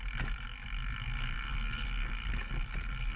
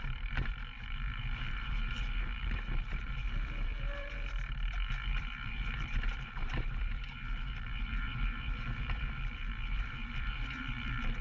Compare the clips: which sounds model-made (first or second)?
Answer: second